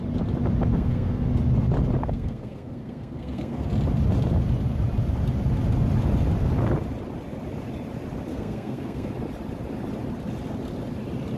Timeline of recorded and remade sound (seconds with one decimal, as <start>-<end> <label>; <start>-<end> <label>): 0.0-0.7 recorded; 0.7-1.3 remade; 1.3-2.0 recorded; 2.0-3.7 remade; 3.7-8.3 recorded; 8.3-9.1 remade; 9.1-11.4 recorded